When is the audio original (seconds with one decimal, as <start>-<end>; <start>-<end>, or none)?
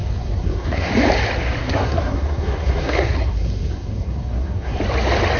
0.9-1.6; 4.8-5.4